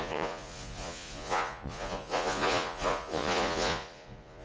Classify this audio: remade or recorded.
remade